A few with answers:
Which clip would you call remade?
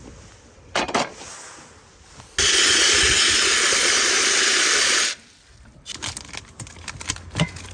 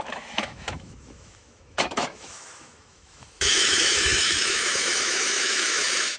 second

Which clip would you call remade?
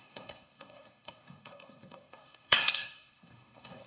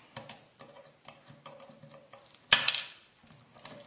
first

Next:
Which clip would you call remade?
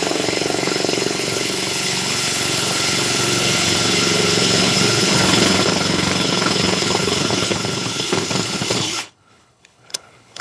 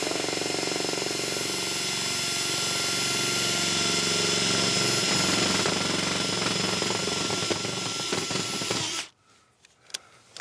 first